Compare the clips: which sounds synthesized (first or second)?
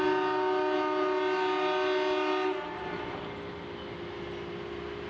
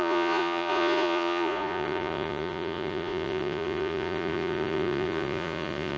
second